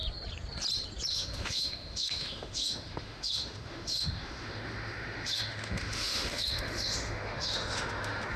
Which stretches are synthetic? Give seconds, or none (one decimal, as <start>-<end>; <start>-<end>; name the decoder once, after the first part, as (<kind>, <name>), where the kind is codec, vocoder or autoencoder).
1.1-8.4 (autoencoder, DAC-VAE)